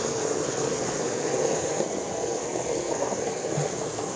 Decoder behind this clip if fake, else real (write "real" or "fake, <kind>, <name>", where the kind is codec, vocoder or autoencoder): fake, codec, SNAC